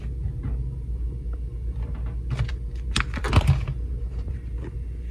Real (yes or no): yes